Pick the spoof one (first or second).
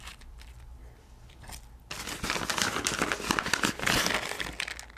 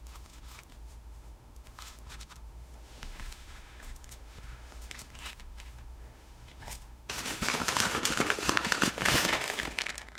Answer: second